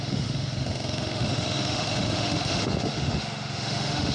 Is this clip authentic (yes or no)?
no